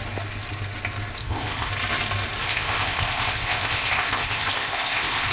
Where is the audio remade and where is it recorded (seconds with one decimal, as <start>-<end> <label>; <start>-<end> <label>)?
0.0-1.2 recorded; 1.2-1.7 remade; 1.7-2.4 recorded; 2.4-5.3 remade